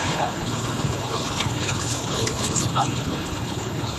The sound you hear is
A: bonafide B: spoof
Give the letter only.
B